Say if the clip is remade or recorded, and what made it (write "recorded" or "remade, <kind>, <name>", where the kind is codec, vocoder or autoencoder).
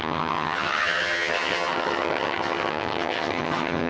remade, vocoder, HiFi-GAN